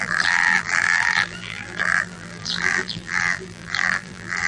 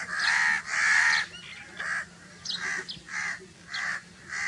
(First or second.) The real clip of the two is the second